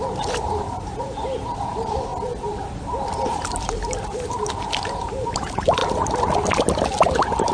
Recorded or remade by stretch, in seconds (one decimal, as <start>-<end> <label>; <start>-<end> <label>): 0.0-2.1 remade; 2.1-3.2 recorded; 3.2-5.8 remade; 5.8-7.0 recorded; 7.0-7.5 remade